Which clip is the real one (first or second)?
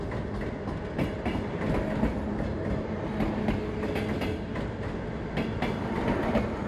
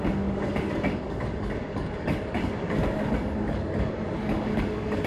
first